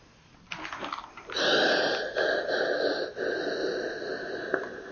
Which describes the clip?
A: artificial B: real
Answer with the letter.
B